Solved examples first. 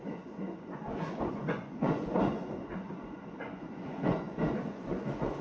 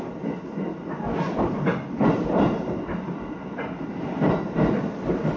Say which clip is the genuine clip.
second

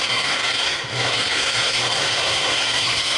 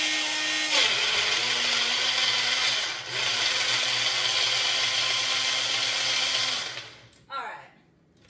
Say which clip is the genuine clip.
second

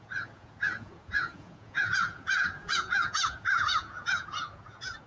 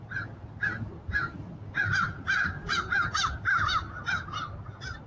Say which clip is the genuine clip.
second